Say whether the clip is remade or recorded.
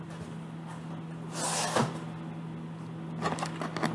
recorded